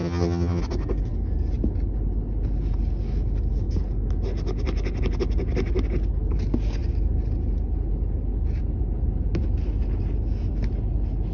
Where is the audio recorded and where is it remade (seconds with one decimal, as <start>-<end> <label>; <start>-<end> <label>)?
0.0-0.6 remade; 0.6-11.3 recorded